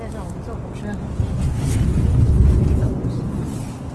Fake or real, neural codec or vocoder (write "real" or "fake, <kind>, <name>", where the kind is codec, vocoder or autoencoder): real